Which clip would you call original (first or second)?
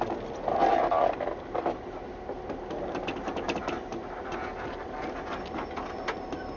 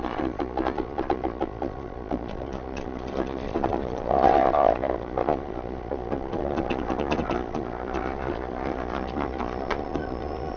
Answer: first